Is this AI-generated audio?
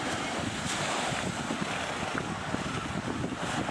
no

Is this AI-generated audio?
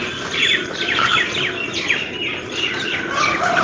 no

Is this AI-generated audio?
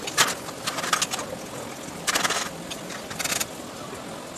no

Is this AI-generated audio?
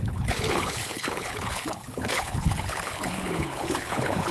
yes